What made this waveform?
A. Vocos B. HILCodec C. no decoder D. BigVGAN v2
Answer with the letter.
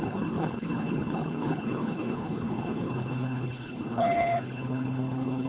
B